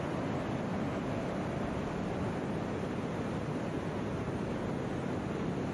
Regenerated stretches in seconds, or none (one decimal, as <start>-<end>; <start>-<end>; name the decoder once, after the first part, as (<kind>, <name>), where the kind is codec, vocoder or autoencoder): none